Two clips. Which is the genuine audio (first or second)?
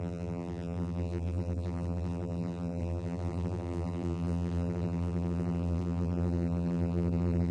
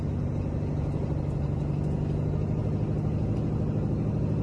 second